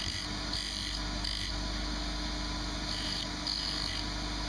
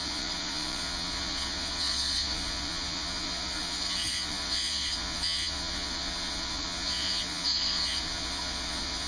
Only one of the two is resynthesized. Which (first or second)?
second